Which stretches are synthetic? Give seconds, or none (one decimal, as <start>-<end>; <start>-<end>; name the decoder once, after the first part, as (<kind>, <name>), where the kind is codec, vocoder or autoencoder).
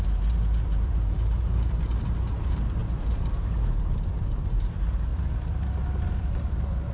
0.0-5.1 (vocoder, BigVGAN v2); 6.2-6.9